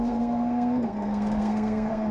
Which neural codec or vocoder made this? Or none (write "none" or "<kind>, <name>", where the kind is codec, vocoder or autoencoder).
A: codec, SNAC